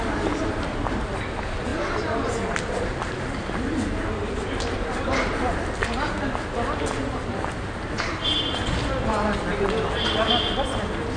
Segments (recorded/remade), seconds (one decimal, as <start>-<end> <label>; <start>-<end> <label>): 0.0-7.0 recorded; 7.0-8.5 remade; 8.5-11.2 recorded